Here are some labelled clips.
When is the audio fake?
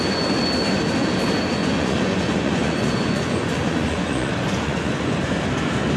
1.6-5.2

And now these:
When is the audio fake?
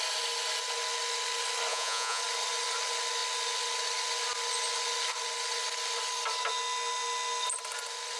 1.7-2.2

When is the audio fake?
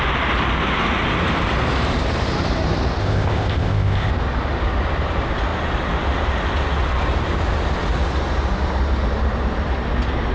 3.0-4.1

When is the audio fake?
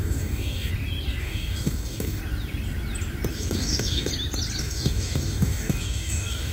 0.0-0.7; 1.2-2.2; 3.3-4.1; 4.6-6.5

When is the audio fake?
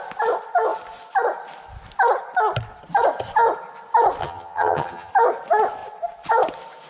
4.2-5.1